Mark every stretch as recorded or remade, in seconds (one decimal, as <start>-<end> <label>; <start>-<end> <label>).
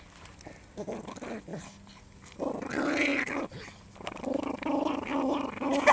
0.0-5.9 recorded